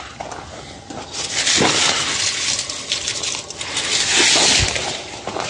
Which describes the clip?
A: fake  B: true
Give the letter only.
B